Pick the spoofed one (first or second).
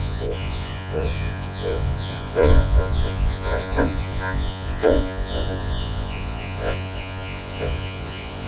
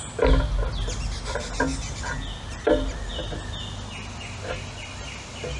first